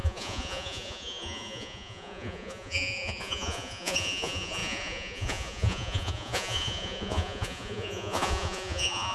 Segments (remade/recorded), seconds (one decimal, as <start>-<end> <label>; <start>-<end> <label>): 0.0-9.1 remade